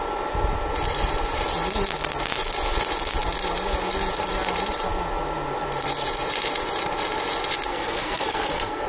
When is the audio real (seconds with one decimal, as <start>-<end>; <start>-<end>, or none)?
0.0-7.7